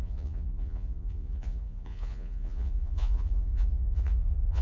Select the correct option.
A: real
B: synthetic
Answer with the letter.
B